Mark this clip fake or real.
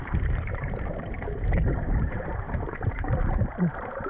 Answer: fake